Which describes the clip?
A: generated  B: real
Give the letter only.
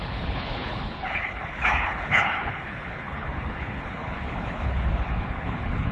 A